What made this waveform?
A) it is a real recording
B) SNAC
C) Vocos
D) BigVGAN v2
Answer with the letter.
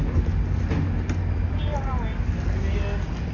A